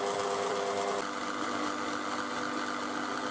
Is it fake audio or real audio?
real